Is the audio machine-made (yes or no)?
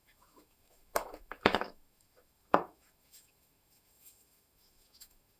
yes